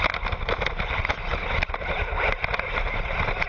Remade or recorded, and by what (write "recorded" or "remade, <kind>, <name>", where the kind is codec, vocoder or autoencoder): recorded